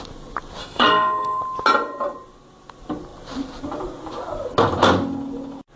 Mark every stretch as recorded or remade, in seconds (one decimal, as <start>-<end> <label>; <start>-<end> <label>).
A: 0.0-0.6 recorded; 0.6-1.4 remade; 1.4-5.8 recorded